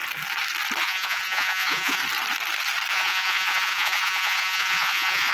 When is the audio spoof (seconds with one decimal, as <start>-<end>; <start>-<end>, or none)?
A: 0.8-2.0; 2.9-5.3